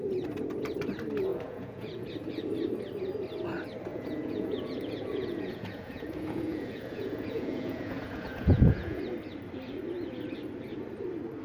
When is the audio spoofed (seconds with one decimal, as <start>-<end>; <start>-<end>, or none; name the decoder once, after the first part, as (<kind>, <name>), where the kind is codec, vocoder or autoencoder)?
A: 1.3-2.1 (vocoder, Vocos); 3.9-9.0